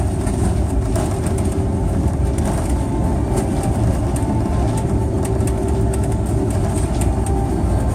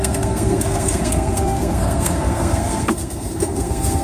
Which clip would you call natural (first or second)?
first